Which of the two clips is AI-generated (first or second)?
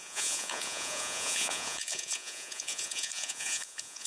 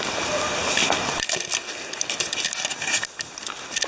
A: first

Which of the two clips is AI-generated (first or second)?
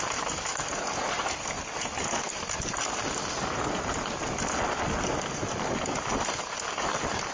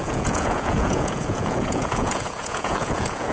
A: second